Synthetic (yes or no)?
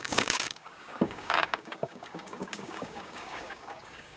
yes